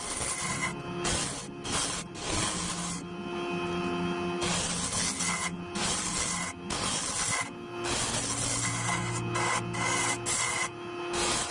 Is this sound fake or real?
real